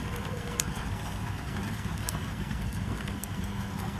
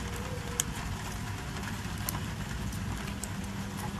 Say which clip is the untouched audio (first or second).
second